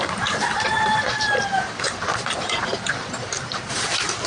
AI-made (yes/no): yes